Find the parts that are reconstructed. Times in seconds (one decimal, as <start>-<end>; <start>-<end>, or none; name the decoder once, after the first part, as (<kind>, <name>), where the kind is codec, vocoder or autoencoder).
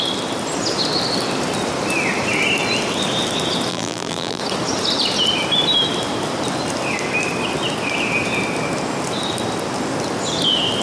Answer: 3.7-4.4 (vocoder, BigVGAN v2)